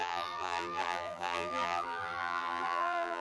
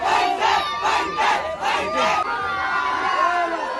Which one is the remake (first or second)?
first